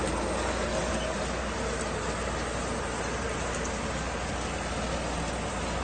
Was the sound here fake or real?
real